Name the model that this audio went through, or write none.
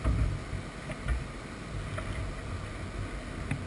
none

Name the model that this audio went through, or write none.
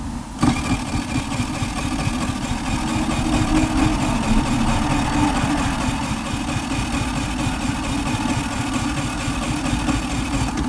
none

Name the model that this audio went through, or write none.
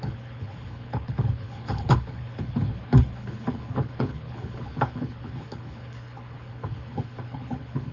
codec, HILCodec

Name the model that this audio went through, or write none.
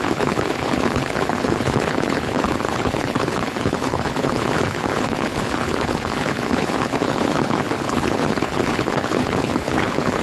codec, HILCodec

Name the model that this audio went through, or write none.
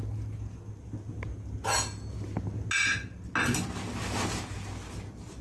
none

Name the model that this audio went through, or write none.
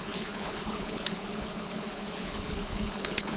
codec, HILCodec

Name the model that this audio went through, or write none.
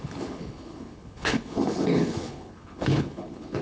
codec, HILCodec